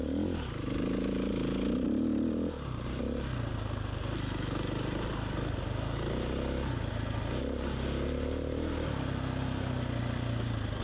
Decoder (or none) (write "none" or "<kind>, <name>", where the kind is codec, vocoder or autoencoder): none